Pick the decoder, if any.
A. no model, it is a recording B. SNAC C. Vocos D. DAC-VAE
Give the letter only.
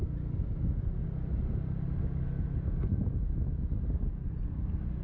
A